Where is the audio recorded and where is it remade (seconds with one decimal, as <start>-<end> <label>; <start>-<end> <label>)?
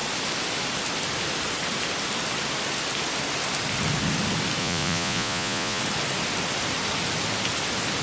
0.0-4.6 recorded; 4.6-5.8 remade; 5.8-8.0 recorded